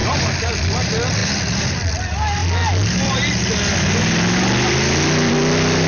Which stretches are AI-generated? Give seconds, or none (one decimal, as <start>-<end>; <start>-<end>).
none